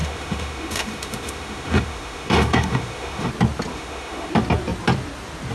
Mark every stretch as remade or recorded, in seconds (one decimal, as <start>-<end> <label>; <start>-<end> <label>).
0.0-3.3 remade; 3.3-3.7 recorded; 3.7-4.3 remade; 4.3-5.5 recorded